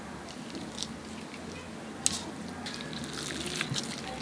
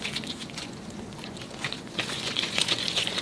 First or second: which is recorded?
first